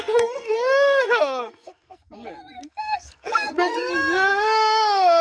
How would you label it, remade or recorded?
remade